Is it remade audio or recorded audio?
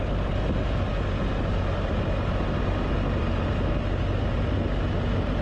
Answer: recorded